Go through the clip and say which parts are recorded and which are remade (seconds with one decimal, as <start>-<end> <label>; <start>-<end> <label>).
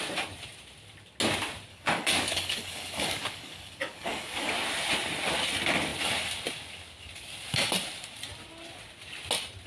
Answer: 0.0-1.7 recorded; 1.7-4.5 remade; 4.5-9.7 recorded